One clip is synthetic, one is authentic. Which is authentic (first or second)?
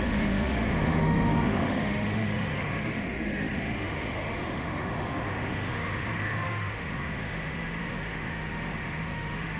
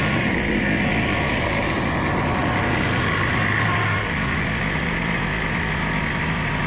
second